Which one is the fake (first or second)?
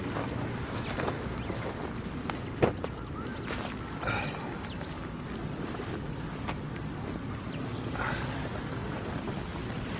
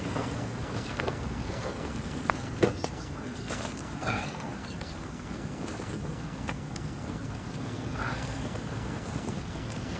second